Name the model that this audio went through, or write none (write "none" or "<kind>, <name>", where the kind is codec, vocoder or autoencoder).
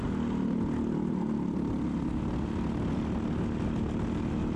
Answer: none